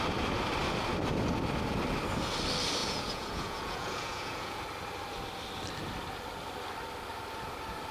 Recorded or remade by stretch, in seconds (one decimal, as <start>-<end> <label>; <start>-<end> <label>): 0.0-2.8 recorded; 2.8-4.6 remade; 4.6-7.9 recorded